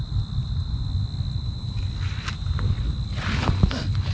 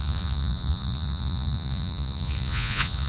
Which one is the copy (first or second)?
second